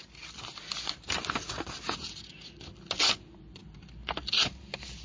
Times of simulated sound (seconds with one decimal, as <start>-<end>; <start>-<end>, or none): none